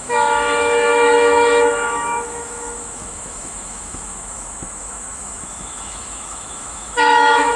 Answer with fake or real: fake